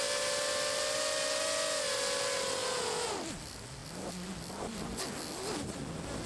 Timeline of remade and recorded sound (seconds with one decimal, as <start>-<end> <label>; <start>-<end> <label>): 0.0-2.6 recorded; 2.6-3.1 remade; 3.1-6.3 recorded